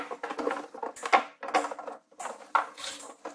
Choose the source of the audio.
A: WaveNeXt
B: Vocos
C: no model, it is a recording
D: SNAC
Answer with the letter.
C